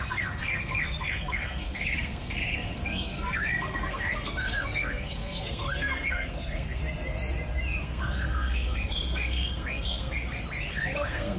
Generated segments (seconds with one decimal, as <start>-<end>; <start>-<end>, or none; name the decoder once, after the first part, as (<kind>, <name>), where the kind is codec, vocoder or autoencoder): 0.0-6.8 (codec, SNAC); 7.8-10.1; 10.7-11.4